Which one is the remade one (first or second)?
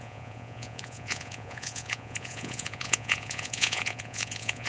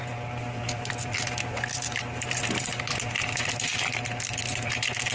first